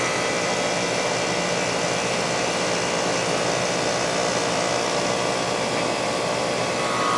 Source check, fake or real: real